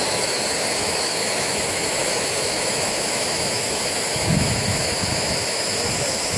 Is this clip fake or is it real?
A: fake